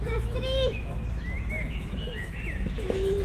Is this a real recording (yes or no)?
no